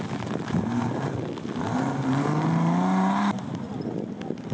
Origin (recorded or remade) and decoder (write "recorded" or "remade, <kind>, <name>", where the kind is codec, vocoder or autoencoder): recorded